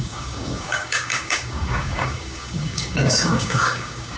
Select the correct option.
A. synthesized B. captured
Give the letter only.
A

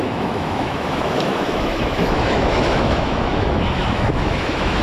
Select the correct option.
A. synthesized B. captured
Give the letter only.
A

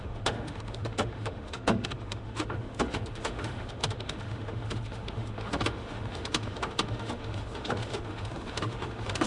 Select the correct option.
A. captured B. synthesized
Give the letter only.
B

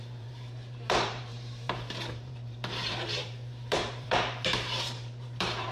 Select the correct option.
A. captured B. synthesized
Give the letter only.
B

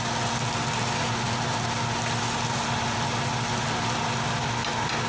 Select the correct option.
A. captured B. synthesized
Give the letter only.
A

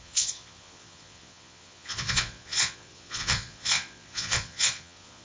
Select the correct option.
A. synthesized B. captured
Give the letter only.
A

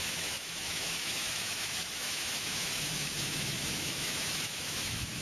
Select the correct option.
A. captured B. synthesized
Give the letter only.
B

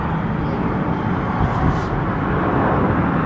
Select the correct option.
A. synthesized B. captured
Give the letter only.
B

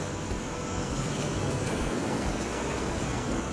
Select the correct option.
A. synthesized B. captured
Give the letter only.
A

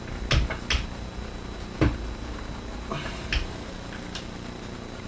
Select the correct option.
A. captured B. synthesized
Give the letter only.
A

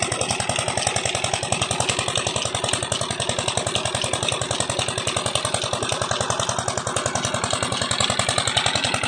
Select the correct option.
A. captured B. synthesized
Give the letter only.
A